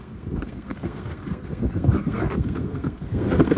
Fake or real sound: fake